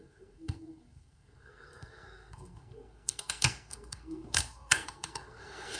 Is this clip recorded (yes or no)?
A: no